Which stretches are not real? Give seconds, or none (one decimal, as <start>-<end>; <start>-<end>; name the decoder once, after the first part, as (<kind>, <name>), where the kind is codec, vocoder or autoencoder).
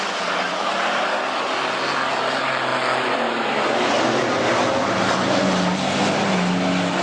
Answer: none